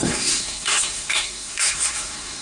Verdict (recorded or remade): remade